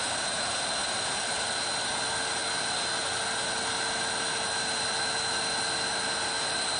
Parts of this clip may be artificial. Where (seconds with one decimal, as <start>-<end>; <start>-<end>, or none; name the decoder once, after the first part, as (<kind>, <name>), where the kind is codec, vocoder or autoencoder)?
0.0-1.5 (vocoder, BigVGAN v2)